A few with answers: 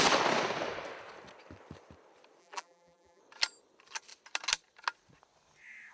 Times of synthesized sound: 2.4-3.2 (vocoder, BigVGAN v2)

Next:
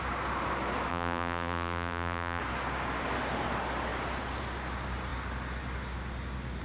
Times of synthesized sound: 0.9-2.4 (vocoder, BigVGAN v2)

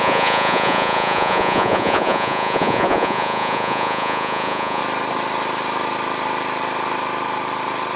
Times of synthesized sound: 0.0-4.8 (vocoder, Vocos)

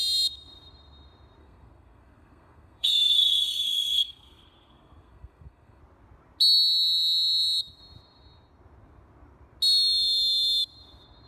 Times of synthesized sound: 1.4-5.8 (codec, SNAC)

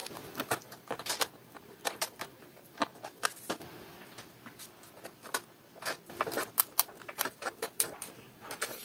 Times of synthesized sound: 0.0-2.9 (vocoder, BigVGAN v2); 7.1-8.8

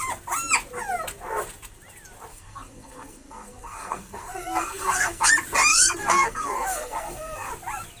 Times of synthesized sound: 2.3-5.3 (codec, SNAC); 5.7-7.5

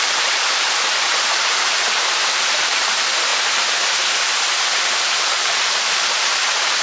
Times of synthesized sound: 0.0-3.3 (vocoder, BigVGAN v2); 4.4-6.8

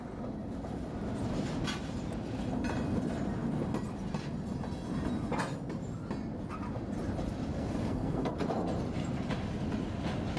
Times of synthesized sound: 7.5-8.3 (codec, SNAC)